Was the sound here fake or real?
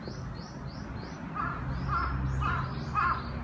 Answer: real